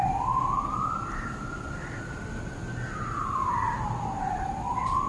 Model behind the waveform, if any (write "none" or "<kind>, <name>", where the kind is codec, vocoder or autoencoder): none